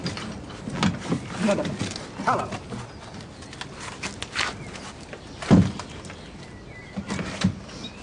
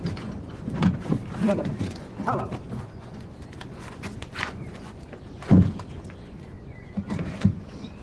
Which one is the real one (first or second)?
first